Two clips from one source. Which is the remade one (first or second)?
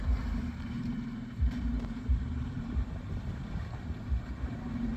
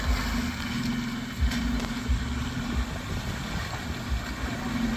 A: first